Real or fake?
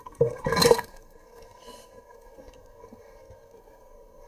fake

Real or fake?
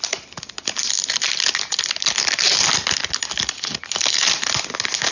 real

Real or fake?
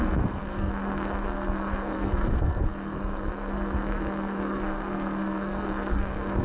fake